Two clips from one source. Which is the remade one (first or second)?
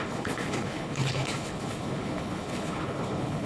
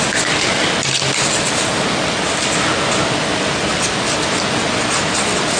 first